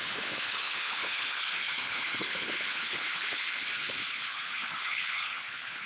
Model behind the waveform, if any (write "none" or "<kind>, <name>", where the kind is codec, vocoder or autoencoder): codec, HILCodec